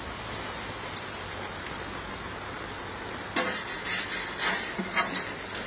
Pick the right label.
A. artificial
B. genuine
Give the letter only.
B